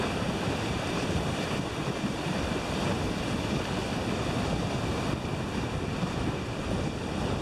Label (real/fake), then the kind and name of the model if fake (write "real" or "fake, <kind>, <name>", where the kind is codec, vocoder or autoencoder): real